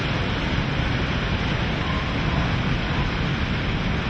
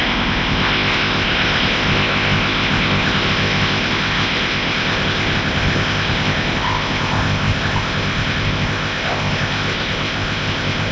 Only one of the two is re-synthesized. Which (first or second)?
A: second